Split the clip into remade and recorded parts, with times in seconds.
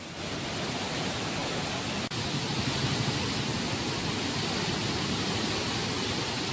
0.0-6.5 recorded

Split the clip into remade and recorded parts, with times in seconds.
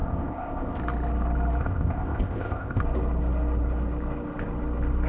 0.0-0.8 remade; 0.8-1.6 recorded; 1.6-2.8 remade; 2.8-5.1 recorded